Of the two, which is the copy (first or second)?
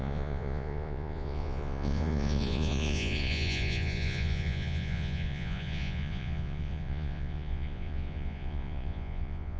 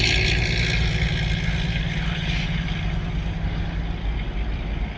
first